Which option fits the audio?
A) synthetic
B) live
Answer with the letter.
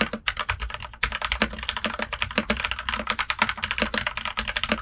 B